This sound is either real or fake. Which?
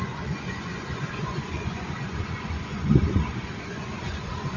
fake